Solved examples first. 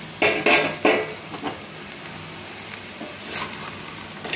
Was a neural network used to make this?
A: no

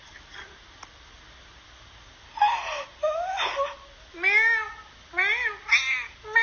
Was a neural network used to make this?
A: no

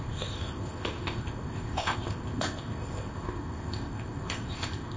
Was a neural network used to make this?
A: yes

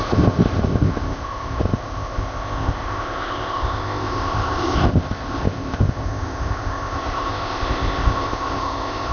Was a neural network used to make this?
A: yes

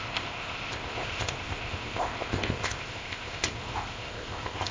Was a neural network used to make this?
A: yes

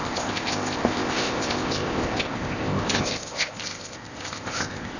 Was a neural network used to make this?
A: yes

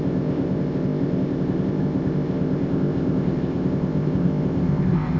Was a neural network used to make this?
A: yes